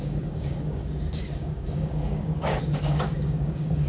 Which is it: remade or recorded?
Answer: remade